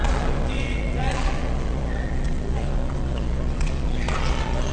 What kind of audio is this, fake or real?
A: fake